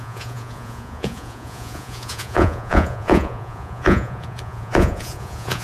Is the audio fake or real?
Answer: fake